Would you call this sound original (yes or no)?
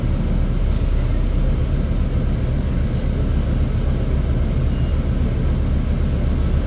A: yes